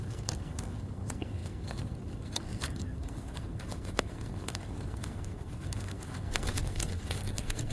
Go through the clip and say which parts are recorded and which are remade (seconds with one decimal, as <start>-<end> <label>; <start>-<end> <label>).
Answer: 0.0-7.7 remade